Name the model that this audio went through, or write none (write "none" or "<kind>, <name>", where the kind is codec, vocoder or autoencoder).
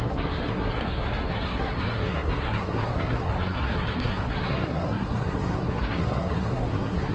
codec, SNAC